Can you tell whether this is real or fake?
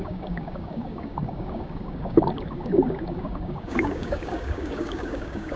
fake